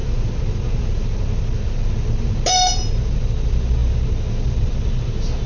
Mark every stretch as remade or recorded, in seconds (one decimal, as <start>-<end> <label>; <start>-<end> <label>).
0.0-5.5 recorded